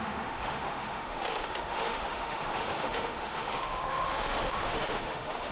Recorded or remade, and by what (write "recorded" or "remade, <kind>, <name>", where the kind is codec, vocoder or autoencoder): remade, autoencoder, DAC-VAE